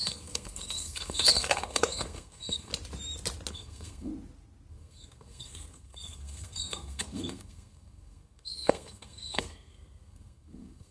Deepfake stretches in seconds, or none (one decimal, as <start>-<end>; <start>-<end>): 0.0-2.7; 3.5-4.1; 4.7-10.9